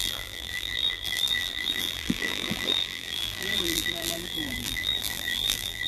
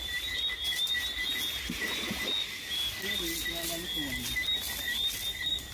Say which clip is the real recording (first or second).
second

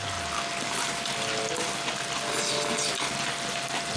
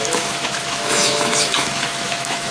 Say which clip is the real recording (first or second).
first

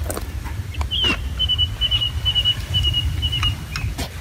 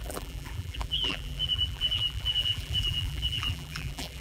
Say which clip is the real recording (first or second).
first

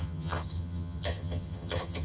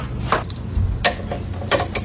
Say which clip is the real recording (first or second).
second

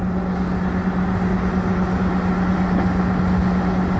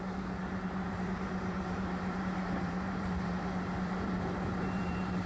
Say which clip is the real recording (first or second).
first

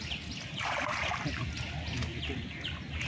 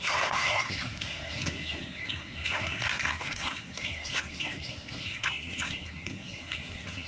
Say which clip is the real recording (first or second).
first